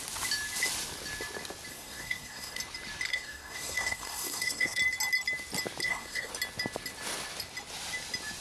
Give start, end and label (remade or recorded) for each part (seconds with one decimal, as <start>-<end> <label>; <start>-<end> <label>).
0.0-1.7 recorded; 1.7-2.6 remade; 2.6-3.1 recorded; 3.1-4.8 remade; 4.8-5.8 recorded; 5.8-6.3 remade; 6.3-8.4 recorded